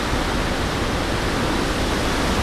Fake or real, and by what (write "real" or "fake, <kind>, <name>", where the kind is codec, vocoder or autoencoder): real